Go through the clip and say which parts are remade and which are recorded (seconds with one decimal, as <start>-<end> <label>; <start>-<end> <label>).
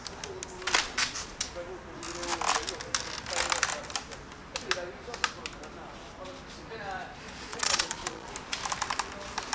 0.0-0.9 recorded; 0.9-1.5 remade; 1.5-7.5 recorded; 7.5-8.3 remade; 8.3-9.5 recorded